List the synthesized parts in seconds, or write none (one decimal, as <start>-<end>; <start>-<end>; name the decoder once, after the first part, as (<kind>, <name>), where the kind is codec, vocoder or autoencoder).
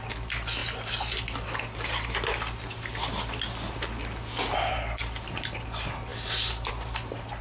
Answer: none